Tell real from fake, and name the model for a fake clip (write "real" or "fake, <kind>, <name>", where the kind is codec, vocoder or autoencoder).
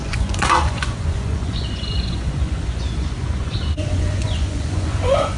fake, vocoder, Vocos